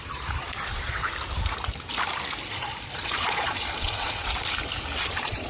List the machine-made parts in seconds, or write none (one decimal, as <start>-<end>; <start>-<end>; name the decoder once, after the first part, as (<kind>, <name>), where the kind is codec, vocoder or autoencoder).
0.0-1.0 (vocoder, Vocos); 2.5-4.2; 5.0-5.5